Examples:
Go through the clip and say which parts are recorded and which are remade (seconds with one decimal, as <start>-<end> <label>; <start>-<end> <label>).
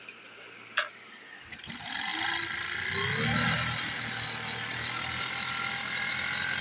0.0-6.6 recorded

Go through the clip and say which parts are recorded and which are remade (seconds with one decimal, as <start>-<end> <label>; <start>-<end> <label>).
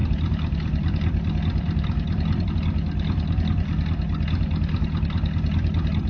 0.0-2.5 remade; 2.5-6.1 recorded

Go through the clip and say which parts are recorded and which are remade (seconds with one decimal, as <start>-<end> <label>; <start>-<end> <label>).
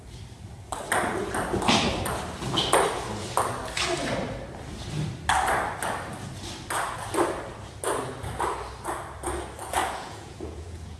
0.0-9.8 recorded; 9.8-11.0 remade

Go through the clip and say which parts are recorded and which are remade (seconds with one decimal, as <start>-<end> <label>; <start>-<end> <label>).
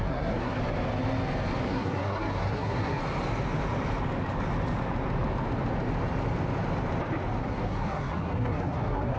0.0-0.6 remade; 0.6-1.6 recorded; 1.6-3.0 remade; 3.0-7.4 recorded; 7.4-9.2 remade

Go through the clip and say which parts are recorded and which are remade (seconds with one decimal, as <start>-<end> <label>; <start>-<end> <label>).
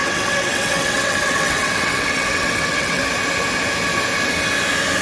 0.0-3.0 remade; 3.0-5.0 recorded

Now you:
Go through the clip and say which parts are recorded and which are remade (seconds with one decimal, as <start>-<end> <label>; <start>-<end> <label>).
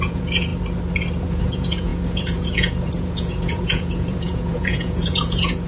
0.0-0.5 remade; 0.5-1.2 recorded; 1.2-5.7 remade